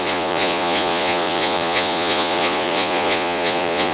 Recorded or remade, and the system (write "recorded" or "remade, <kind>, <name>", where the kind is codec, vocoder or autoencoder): remade, vocoder, Vocos